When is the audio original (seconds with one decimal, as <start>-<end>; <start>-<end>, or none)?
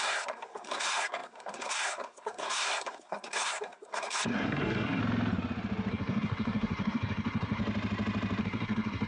5.0-5.9; 7.6-8.4